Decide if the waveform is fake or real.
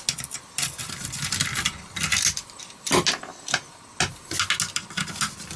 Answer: real